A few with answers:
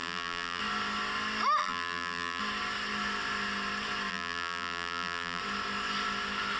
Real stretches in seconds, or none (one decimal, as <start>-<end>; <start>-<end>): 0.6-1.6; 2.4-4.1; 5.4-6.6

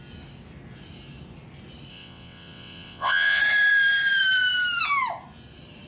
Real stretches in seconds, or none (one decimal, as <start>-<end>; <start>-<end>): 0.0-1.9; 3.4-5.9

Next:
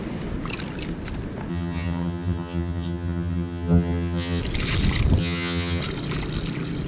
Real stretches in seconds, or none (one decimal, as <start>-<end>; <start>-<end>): 0.0-1.5; 4.4-5.2; 5.8-6.9